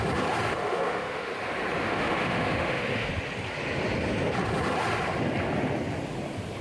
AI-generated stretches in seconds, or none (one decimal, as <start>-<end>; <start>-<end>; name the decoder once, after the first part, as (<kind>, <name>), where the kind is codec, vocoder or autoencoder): 0.5-1.3 (autoencoder, DAC-VAE); 1.8-3.1